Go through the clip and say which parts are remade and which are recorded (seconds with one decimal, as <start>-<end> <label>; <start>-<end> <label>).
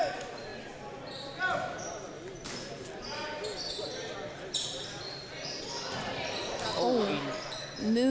0.0-8.1 recorded